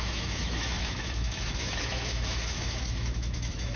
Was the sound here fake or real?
fake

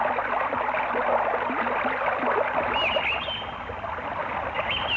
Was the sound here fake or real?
real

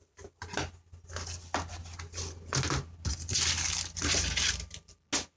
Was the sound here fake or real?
real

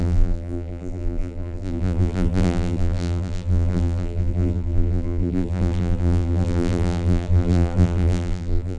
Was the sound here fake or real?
fake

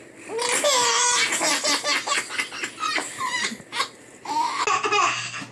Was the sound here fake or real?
real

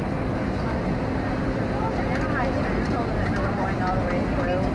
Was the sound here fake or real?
real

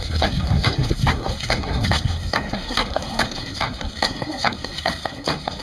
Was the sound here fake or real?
fake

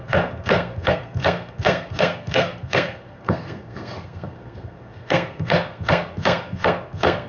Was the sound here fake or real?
fake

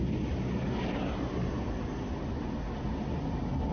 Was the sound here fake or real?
real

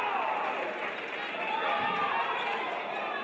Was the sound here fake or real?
real